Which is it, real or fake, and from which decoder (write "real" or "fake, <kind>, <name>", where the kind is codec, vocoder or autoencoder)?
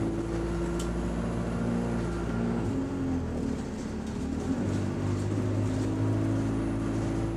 real